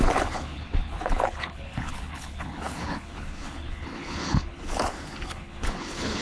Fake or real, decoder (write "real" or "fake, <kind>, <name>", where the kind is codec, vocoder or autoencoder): fake, codec, HILCodec